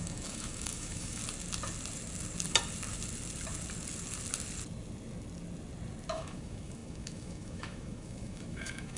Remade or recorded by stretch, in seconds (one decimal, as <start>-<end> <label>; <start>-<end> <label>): 0.0-1.2 remade; 1.2-6.1 recorded; 6.1-9.0 remade